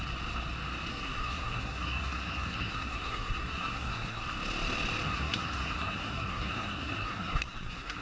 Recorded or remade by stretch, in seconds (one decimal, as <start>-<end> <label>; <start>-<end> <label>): 0.0-0.9 recorded; 0.9-4.2 remade; 4.2-5.1 recorded; 5.1-8.0 remade